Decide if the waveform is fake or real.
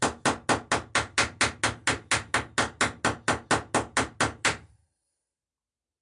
real